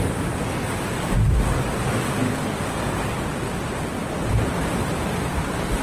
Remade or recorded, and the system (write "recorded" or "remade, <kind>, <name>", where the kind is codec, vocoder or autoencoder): recorded